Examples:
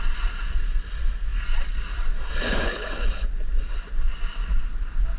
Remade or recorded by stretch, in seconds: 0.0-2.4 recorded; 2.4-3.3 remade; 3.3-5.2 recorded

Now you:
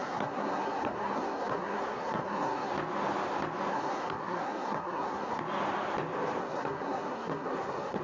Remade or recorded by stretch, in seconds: 0.0-2.7 remade; 2.7-3.7 recorded; 3.7-5.4 remade; 5.4-6.4 recorded; 6.4-8.0 remade